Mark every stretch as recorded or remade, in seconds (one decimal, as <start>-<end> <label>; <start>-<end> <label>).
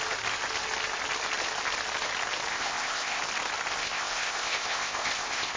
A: 0.0-2.5 recorded; 2.5-3.2 remade; 3.2-3.8 recorded; 3.8-5.6 remade